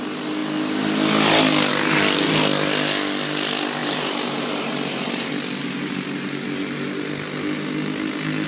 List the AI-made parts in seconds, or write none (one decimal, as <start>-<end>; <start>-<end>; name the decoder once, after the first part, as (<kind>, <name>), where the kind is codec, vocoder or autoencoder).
3.8-5.3 (vocoder, BigVGAN v2)